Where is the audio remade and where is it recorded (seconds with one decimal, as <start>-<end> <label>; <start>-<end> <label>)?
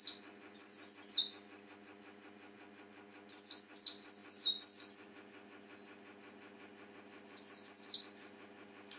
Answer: 0.0-9.0 recorded